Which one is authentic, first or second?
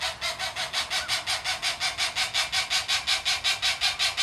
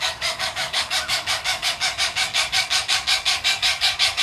first